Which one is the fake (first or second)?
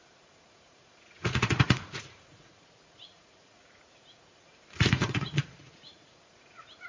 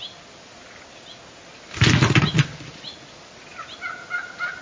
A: first